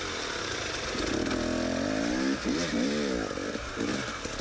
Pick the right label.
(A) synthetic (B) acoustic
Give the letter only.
B